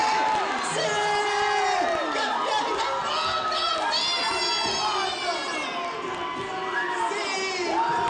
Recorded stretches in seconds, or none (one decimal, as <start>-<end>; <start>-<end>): 0.0-8.1